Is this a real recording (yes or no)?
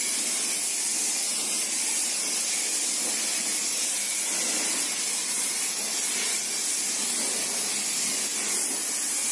yes